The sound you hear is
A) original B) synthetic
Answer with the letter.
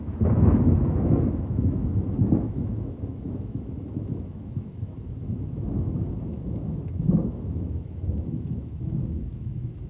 B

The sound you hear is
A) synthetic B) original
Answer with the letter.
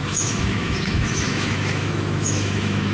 A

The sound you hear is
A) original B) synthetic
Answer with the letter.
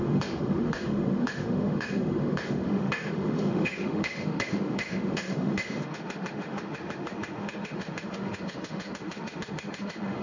B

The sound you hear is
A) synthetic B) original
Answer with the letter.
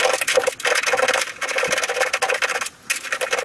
B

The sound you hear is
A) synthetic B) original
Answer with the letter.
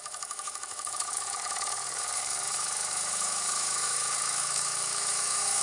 A